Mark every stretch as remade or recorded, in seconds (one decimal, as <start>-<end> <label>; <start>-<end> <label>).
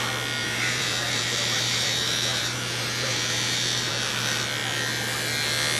0.0-0.4 recorded; 0.4-3.9 remade; 3.9-5.8 recorded